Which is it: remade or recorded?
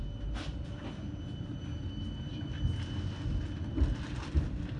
recorded